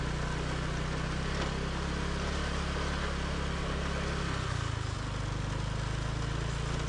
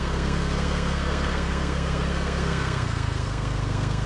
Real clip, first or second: first